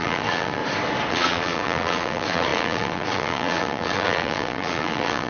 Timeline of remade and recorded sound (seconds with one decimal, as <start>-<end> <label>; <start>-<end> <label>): 0.0-0.6 remade; 0.6-1.1 recorded; 1.1-5.3 remade